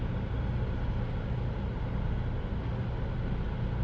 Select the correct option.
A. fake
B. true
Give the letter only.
B